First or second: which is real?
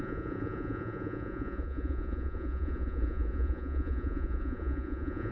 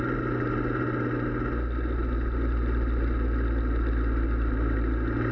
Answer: second